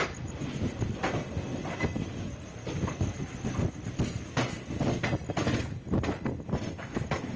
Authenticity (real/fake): real